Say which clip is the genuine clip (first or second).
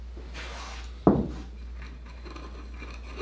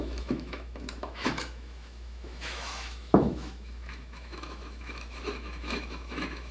first